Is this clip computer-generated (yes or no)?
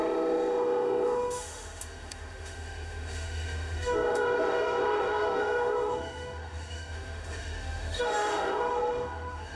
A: yes